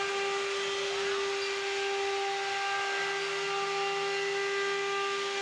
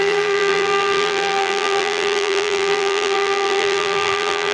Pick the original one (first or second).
first